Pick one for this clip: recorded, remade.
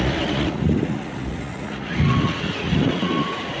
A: remade